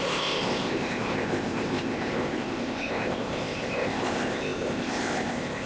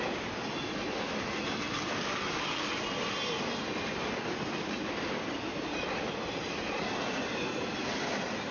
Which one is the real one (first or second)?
second